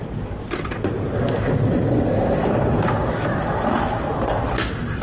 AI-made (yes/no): no